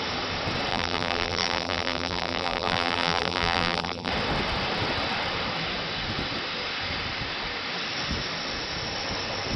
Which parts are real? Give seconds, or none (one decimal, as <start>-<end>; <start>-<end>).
0.0-0.7; 4.1-9.6